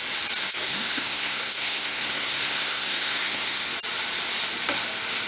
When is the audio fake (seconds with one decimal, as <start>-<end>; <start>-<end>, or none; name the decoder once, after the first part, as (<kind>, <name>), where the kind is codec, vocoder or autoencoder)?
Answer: 0.4-3.6 (codec, SNAC)